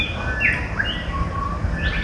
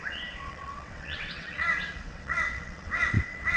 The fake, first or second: second